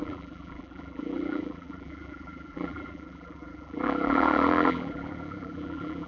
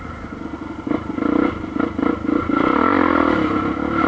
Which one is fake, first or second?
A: first